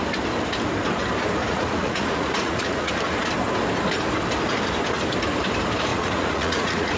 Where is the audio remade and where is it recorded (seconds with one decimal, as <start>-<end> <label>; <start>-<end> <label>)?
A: 0.0-1.4 recorded; 1.4-2.9 remade; 2.9-5.9 recorded; 5.9-7.0 remade